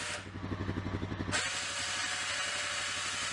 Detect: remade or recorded recorded